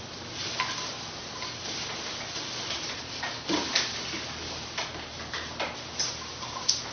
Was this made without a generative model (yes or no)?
yes